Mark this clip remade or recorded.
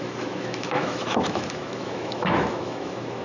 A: remade